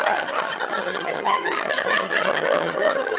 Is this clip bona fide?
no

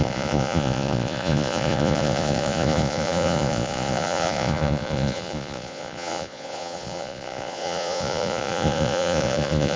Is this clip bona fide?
no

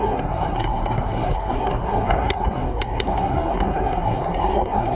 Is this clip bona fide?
no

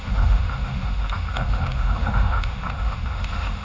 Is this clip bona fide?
no